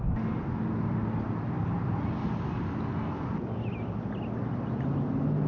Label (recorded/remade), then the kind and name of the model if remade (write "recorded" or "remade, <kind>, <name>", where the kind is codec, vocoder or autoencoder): recorded